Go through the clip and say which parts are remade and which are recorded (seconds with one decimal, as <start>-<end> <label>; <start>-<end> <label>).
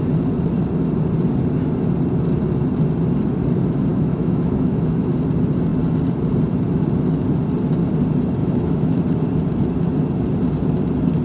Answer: 0.0-3.9 recorded; 3.9-5.1 remade; 5.1-8.4 recorded; 8.4-9.0 remade; 9.0-11.2 recorded